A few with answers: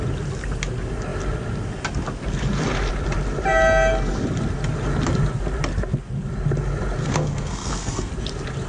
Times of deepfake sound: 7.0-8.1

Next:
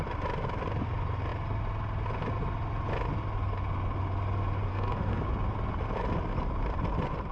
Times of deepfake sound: 4.7-5.2

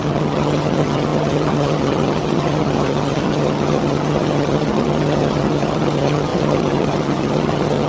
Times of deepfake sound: 0.0-7.9

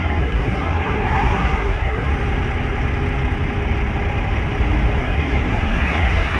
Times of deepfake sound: 0.0-2.1; 5.0-6.4

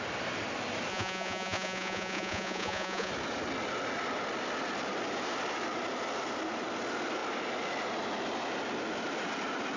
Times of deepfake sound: 0.9-3.1